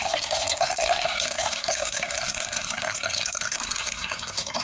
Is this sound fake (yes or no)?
yes